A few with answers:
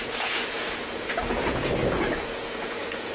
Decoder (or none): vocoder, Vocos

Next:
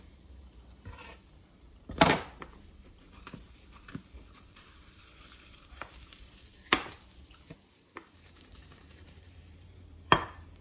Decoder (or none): vocoder, BigVGAN v2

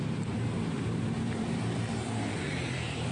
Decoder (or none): vocoder, BigVGAN v2